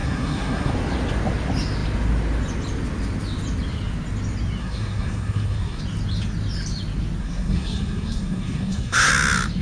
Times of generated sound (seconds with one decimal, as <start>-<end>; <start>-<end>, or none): 0.0-0.7; 4.6-5.8; 7.2-9.1